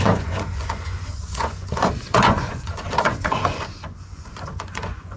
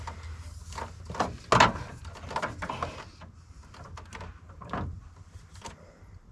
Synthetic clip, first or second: first